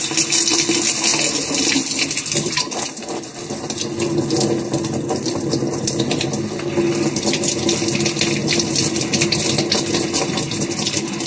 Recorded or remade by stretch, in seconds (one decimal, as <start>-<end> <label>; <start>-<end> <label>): 0.0-11.3 recorded